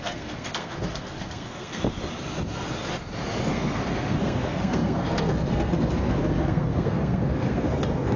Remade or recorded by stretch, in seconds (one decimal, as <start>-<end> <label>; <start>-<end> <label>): 0.0-1.8 remade; 1.8-3.5 recorded; 3.5-8.2 remade

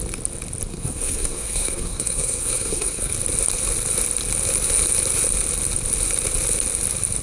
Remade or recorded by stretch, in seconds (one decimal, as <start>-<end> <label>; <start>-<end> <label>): 0.0-0.7 recorded; 0.7-3.1 remade; 3.1-7.2 recorded

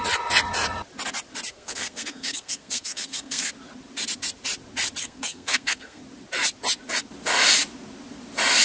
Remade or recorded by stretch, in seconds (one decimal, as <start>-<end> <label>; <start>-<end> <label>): 0.0-1.5 recorded; 1.5-3.5 remade; 3.5-5.0 recorded; 5.0-6.0 remade; 6.0-8.6 recorded